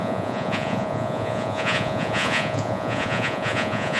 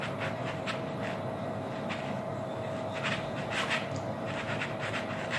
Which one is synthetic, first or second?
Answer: first